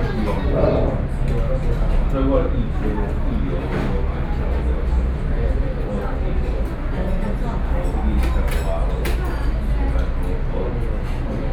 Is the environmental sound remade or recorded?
recorded